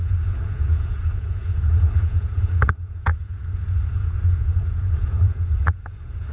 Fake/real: fake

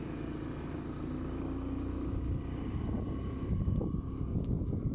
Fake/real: real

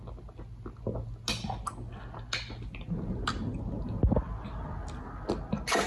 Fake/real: real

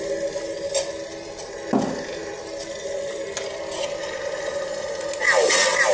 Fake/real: real